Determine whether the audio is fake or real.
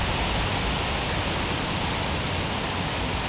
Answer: real